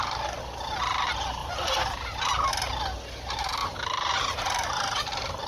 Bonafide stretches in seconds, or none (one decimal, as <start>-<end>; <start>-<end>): 0.0-1.4; 2.5-3.6; 5.0-5.5